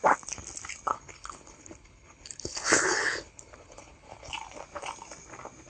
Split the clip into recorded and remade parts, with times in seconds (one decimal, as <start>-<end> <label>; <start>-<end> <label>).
0.0-0.9 recorded; 0.9-4.3 remade; 4.3-5.7 recorded